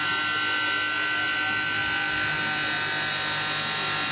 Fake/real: real